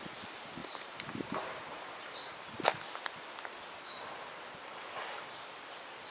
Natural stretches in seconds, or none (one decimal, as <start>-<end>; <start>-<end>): 0.0-0.6; 2.6-6.1